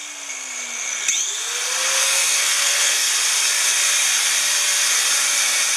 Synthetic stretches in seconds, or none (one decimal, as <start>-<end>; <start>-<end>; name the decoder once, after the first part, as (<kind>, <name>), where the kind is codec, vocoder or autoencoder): 2.0-3.1 (codec, SNAC)